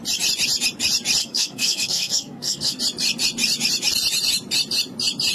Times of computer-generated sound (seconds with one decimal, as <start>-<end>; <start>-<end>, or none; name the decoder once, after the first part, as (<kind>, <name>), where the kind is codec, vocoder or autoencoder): 1.2-2.8 (codec, SNAC)